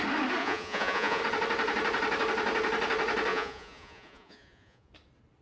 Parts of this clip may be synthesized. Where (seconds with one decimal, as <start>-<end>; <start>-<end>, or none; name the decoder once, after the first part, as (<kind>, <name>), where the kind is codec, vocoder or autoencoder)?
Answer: 0.4-1.2 (vocoder, Vocos); 3.3-4.9

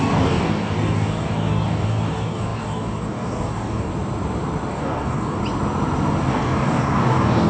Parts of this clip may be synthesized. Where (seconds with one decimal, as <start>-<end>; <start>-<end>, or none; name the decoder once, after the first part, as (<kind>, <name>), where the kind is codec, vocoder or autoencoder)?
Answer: 0.0-3.9 (codec, DAC); 4.7-5.4; 6.3-7.5

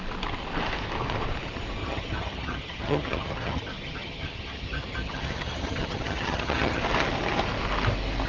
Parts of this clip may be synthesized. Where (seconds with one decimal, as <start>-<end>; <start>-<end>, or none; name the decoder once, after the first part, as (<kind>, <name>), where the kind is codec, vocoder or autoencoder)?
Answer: 1.8-6.8 (vocoder, HiFi-GAN)

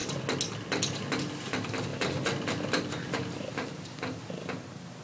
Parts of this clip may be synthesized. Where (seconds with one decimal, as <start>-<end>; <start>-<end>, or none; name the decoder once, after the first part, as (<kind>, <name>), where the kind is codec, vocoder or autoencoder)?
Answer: none

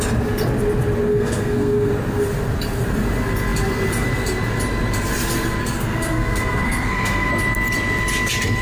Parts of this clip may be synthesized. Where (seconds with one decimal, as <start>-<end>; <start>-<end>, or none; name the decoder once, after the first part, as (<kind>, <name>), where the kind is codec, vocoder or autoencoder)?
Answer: 1.1-1.9 (codec, SNAC); 5.6-7.3

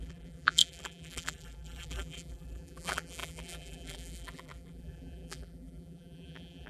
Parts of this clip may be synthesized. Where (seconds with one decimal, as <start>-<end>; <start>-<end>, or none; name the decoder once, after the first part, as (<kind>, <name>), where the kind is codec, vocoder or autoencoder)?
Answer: 0.0-6.7 (vocoder, BigVGAN v2)

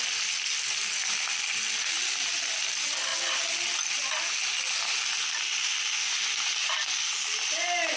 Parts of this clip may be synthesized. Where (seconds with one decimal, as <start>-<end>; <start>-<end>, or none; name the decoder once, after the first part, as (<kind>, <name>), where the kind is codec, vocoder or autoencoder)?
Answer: none